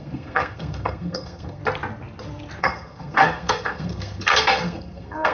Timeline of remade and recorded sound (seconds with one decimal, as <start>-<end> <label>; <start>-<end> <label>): 0.0-1.6 remade; 1.6-2.6 recorded; 2.6-5.3 remade